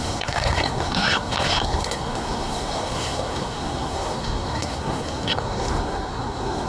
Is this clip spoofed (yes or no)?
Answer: yes